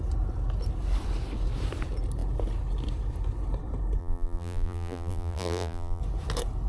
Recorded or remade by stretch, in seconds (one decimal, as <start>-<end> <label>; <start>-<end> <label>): 0.0-4.0 recorded; 4.0-6.0 remade; 6.0-6.7 recorded